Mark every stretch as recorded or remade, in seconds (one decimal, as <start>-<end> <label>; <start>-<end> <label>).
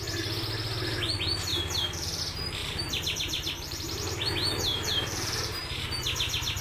0.0-1.5 recorded; 1.5-2.2 remade; 2.2-2.6 recorded; 2.6-4.3 remade; 4.3-4.7 recorded; 4.7-5.8 remade; 5.8-6.6 recorded